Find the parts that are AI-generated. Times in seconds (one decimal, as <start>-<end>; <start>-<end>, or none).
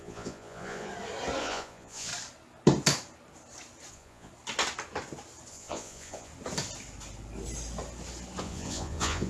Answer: 0.0-0.9; 1.4-2.1; 3.9-4.3; 5.5-6.3; 8.4-9.3